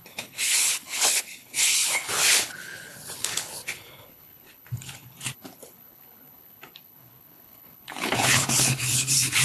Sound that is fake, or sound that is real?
fake